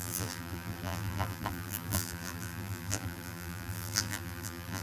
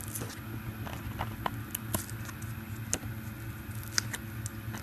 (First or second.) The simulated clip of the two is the first